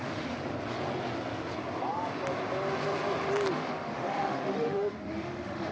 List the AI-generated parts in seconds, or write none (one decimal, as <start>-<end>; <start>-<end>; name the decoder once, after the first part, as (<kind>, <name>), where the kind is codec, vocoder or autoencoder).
0.0-0.4 (autoencoder, DAC-VAE); 3.5-5.7